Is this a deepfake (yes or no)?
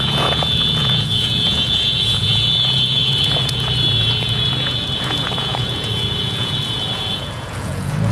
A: yes